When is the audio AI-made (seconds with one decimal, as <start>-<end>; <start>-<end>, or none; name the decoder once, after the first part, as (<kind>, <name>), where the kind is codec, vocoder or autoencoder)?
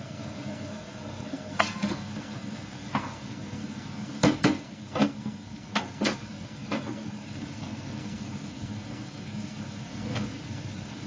0.0-11.1 (codec, SNAC)